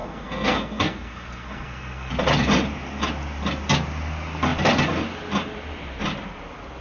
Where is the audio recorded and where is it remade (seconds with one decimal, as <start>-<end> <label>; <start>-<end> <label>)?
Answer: 0.0-2.1 remade; 2.1-6.8 recorded